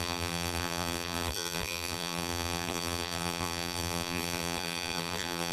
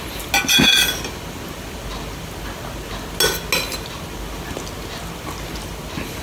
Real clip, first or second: second